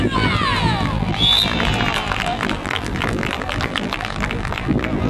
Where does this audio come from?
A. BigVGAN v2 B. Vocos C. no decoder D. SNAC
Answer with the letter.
A